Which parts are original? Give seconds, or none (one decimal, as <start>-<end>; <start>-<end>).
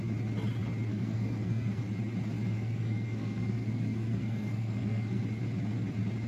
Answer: 0.0-0.9; 1.9-2.5; 5.2-6.3